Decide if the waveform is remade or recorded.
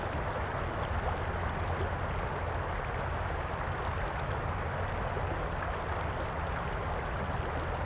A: recorded